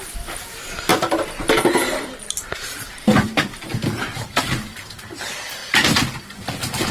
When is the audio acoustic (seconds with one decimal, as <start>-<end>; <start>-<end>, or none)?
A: 5.6-6.9